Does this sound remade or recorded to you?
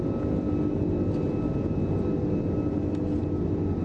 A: recorded